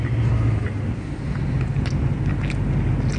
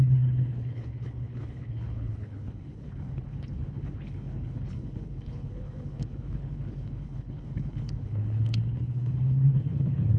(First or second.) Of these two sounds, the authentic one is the first